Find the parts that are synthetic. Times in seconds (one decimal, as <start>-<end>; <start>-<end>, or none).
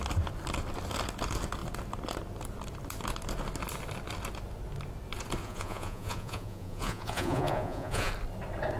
5.4-8.1